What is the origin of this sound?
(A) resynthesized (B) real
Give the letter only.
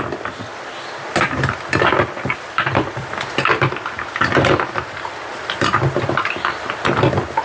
B